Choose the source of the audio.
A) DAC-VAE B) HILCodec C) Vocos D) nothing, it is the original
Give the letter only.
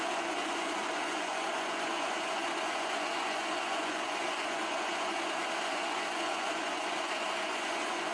C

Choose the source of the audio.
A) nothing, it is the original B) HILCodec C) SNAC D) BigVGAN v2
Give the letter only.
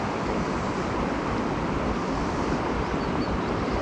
A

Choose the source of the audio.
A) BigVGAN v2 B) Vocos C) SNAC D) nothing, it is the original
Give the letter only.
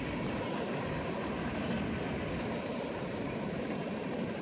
D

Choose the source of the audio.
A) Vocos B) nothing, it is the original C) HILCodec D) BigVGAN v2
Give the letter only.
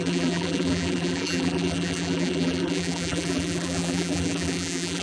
D